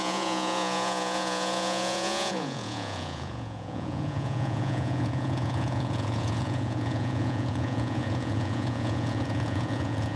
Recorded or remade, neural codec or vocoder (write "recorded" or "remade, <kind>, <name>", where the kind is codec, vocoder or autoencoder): remade, vocoder, Vocos